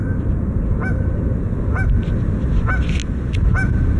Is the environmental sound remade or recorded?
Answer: recorded